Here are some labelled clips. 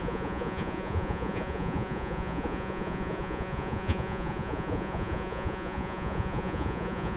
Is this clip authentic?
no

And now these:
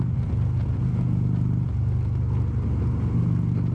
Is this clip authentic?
yes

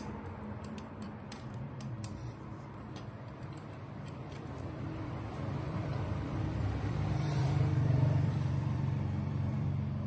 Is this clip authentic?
no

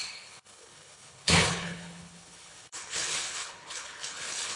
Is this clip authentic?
no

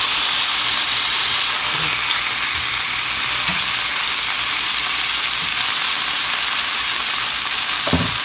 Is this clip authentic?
yes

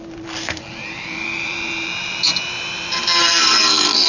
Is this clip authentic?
no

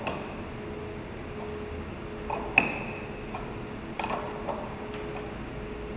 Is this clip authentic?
yes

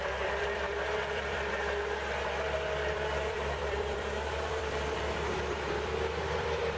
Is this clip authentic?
no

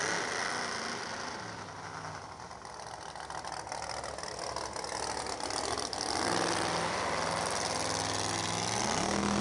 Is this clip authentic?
yes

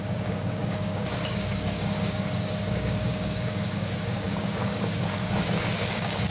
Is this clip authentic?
no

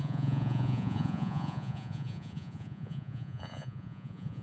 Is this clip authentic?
no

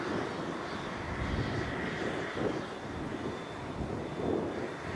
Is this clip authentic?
yes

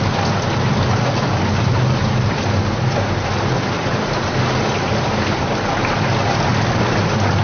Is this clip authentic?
yes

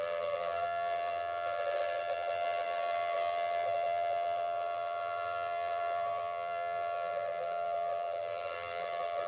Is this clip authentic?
no